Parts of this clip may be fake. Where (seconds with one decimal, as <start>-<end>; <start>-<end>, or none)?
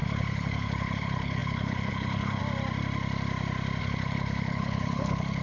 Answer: 0.0-2.4; 3.8-5.4